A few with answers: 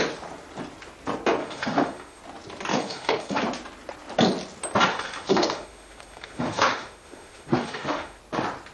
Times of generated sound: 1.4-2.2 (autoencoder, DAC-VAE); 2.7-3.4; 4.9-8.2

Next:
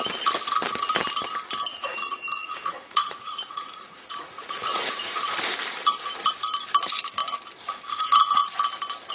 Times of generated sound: 1.7-5.2 (vocoder, Vocos)

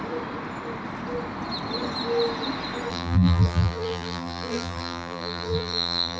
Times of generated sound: 2.9-6.2 (vocoder, BigVGAN v2)

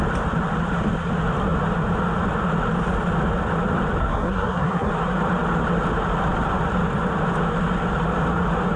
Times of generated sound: 4.0-4.9 (codec, SNAC)

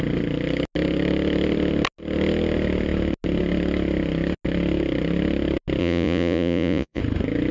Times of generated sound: 5.8-7.0 (vocoder, Vocos)